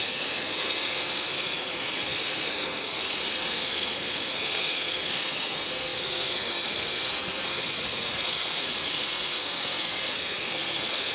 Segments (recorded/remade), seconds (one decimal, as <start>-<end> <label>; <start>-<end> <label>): 0.0-11.1 remade